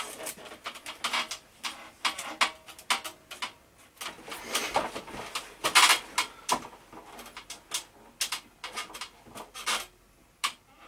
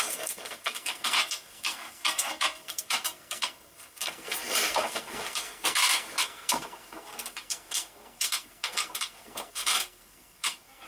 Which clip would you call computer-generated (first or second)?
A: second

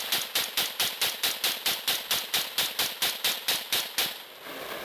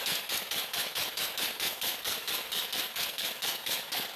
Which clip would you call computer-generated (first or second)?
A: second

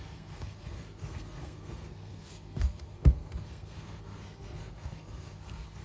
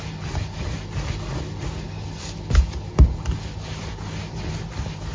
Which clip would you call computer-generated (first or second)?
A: first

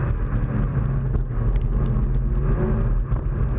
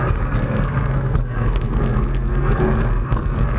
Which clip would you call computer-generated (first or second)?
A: second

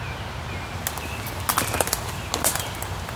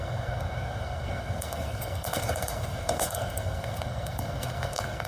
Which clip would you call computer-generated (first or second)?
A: second